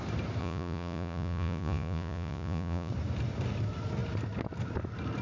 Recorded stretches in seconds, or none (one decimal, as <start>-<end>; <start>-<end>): 0.0-0.4; 2.9-5.2